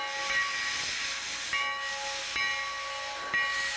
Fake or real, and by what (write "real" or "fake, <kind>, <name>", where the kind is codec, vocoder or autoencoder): real